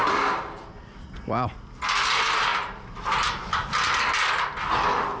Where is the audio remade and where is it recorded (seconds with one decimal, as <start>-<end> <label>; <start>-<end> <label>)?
0.0-2.5 recorded; 2.5-3.1 remade; 3.1-5.2 recorded